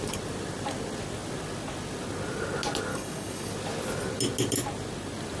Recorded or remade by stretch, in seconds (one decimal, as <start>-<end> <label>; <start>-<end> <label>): 0.0-2.9 recorded; 2.9-3.5 remade; 3.5-5.4 recorded